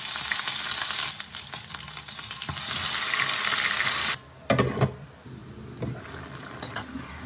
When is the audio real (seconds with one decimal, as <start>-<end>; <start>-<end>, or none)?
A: 0.0-7.3